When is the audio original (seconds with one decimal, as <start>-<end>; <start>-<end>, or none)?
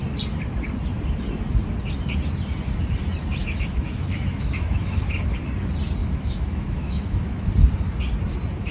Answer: 0.0-3.4; 5.0-6.0; 7.5-8.7